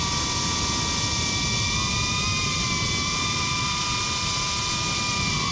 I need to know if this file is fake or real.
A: real